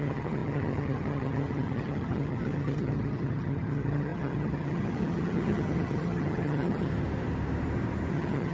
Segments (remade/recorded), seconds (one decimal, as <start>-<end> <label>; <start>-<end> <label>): 0.0-6.9 remade; 6.9-8.1 recorded; 8.1-8.5 remade